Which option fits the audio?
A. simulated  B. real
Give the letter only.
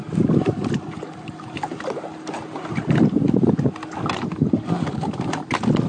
B